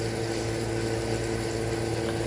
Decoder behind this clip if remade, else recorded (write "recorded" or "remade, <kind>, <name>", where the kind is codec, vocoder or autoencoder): recorded